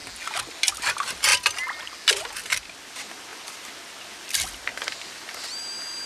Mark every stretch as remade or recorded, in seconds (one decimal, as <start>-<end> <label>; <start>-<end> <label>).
0.0-0.8 recorded; 0.8-1.3 remade; 1.3-2.4 recorded; 2.4-6.1 remade